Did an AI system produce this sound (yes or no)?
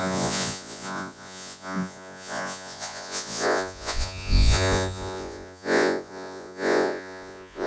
yes